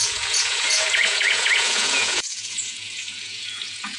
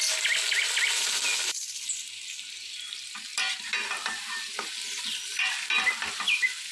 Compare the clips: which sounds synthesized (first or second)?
first